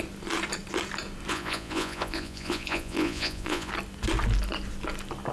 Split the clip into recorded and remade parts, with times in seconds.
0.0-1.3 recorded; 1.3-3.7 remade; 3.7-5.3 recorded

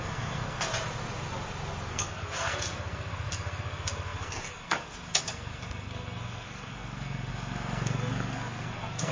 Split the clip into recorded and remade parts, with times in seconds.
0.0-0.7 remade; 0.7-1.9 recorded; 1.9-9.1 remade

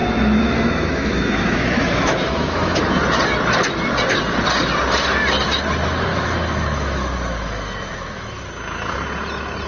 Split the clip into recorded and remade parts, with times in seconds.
0.0-2.8 remade; 2.8-6.1 recorded; 6.1-8.5 remade; 8.5-9.7 recorded

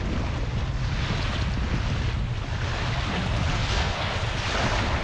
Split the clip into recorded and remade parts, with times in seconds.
0.0-3.5 recorded; 3.5-4.1 remade; 4.1-5.0 recorded